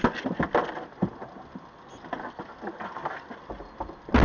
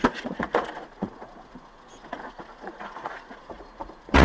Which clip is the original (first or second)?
first